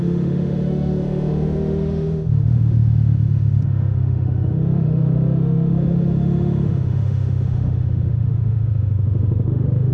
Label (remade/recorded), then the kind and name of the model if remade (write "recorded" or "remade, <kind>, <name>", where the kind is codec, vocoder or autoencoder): remade, autoencoder, DAC-VAE